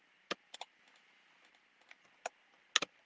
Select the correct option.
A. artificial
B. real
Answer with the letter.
B